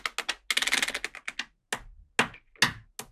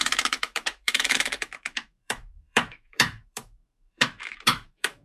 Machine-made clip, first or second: second